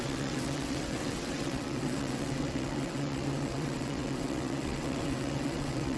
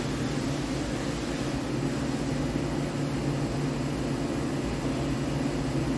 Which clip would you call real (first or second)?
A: second